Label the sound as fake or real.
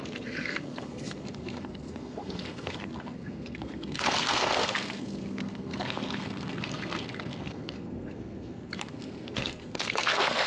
fake